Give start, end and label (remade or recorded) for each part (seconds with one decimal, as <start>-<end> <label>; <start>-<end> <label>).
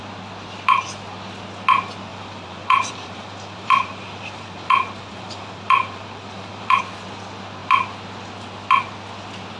0.0-2.1 recorded; 2.1-6.8 remade; 6.8-9.6 recorded